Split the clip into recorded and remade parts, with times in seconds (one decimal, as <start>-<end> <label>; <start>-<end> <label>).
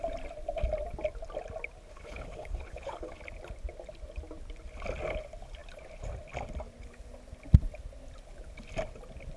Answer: 0.0-1.9 recorded; 1.9-3.2 remade; 3.2-9.4 recorded